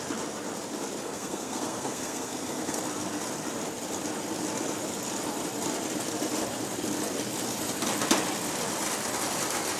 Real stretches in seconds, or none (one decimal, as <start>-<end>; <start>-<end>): 0.0-1.0; 2.8-9.8